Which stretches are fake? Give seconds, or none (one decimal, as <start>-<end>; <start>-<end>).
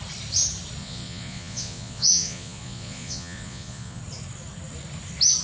0.8-4.0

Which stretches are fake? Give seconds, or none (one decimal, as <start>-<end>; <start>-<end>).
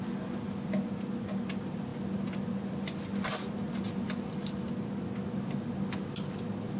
none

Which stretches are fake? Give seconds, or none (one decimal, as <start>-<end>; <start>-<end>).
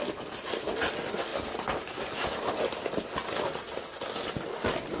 none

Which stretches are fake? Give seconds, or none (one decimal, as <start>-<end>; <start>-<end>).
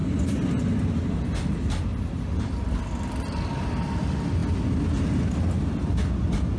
none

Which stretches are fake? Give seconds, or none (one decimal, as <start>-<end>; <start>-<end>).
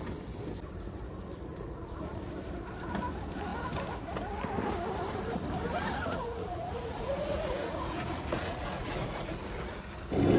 1.5-2.2; 5.8-9.7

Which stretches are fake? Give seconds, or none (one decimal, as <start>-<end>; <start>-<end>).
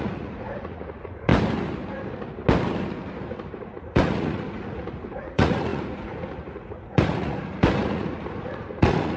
0.0-1.3; 3.5-9.2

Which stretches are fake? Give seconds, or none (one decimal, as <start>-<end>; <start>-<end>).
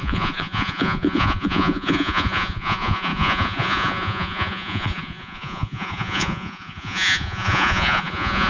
0.0-8.5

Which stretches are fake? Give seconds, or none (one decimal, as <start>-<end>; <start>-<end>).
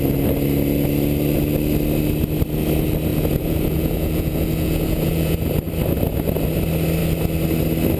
3.1-5.6